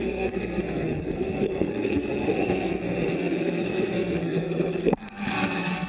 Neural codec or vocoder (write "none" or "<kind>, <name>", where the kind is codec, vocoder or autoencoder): codec, SNAC